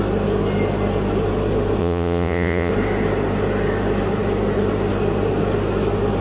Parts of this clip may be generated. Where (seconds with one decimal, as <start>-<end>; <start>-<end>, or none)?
1.8-2.7

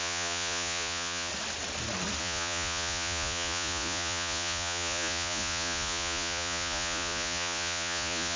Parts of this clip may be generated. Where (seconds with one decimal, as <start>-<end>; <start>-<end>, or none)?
0.0-1.3; 2.2-8.4